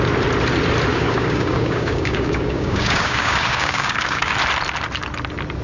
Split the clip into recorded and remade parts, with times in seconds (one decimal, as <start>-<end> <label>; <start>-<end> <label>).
0.0-0.9 recorded; 0.9-4.3 remade; 4.3-5.6 recorded

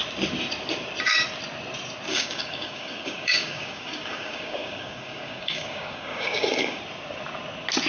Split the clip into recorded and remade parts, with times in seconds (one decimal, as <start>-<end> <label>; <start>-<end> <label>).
0.0-2.1 recorded; 2.1-6.8 remade; 6.8-7.9 recorded

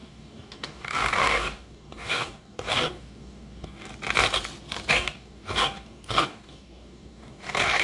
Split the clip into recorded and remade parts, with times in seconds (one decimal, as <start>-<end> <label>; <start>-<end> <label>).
0.0-3.9 remade; 3.9-4.9 recorded; 4.9-7.8 remade

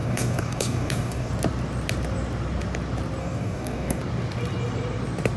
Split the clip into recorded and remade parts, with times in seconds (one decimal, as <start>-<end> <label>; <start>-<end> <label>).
0.0-1.3 remade; 1.3-3.2 recorded; 3.2-4.0 remade; 4.0-5.4 recorded

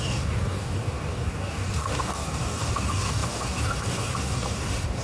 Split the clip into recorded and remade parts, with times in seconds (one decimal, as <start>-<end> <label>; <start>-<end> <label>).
0.0-5.0 remade

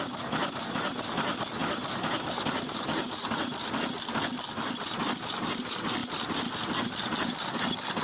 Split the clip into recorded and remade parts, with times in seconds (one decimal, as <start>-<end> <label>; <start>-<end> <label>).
0.0-8.0 recorded